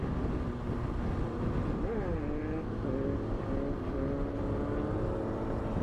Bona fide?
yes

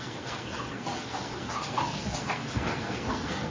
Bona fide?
no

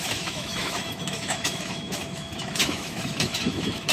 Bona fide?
no